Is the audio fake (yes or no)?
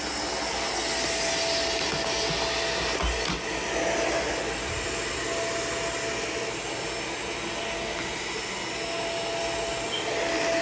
no